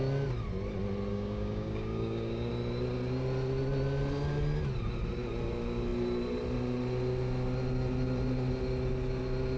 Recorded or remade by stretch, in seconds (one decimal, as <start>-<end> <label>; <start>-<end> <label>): 0.0-1.1 recorded; 1.1-2.5 remade; 2.5-9.6 recorded

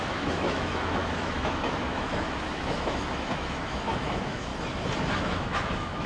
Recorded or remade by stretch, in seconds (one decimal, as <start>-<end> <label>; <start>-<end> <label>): 0.0-4.5 remade; 4.5-5.2 recorded; 5.2-6.1 remade

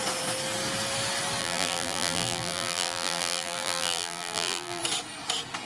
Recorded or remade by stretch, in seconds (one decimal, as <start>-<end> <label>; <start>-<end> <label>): 0.0-1.4 recorded; 1.4-4.8 remade; 4.8-5.7 recorded